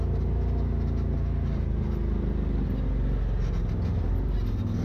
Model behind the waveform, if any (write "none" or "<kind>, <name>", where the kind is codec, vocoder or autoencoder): none